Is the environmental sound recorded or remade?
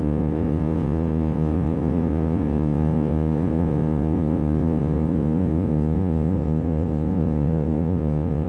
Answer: remade